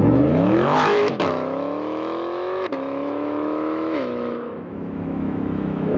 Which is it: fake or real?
fake